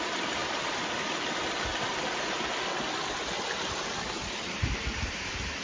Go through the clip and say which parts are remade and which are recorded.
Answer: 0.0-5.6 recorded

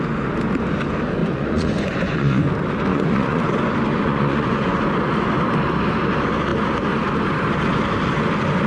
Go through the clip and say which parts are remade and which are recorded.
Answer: 0.0-1.2 recorded; 1.2-2.5 remade; 2.5-2.9 recorded; 2.9-3.4 remade; 3.4-3.9 recorded; 3.9-4.8 remade; 4.8-8.7 recorded

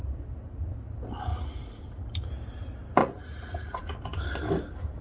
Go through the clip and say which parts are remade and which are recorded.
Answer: 0.0-1.3 recorded; 1.3-2.0 remade; 2.0-3.0 recorded; 3.0-3.8 remade; 3.8-5.0 recorded

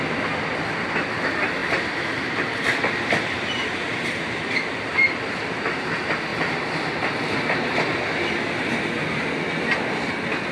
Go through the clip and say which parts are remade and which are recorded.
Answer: 0.0-1.6 recorded; 1.6-5.8 remade; 5.8-6.3 recorded; 6.3-7.0 remade; 7.0-10.5 recorded

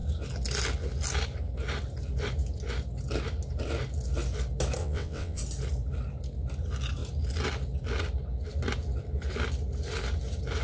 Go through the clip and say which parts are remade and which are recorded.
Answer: 0.0-4.8 recorded; 4.8-5.4 remade; 5.4-10.6 recorded

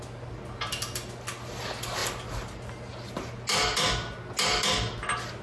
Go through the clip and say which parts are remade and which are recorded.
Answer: 0.0-5.4 recorded